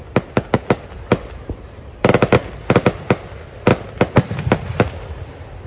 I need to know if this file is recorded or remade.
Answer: recorded